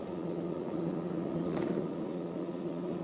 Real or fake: fake